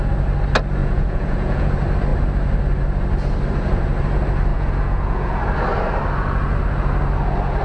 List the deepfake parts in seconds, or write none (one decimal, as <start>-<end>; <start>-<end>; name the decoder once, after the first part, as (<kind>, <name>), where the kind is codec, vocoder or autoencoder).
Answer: 0.8-1.7 (vocoder, Vocos); 4.5-5.4